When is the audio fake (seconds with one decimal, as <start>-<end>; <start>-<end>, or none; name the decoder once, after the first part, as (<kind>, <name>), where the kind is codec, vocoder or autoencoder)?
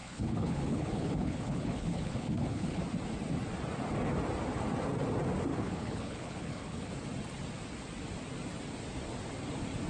0.0-2.8 (codec, HILCodec); 5.5-6.9